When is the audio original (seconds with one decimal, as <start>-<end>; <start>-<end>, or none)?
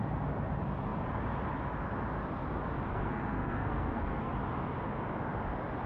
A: 0.0-2.9; 4.3-5.9